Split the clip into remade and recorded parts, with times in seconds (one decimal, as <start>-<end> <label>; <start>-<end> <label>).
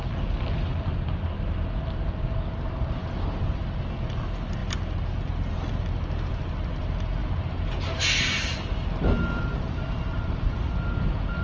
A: 0.0-11.4 recorded